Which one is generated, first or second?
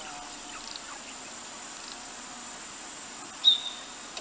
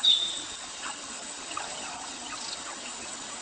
second